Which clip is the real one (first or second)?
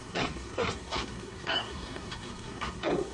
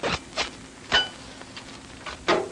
second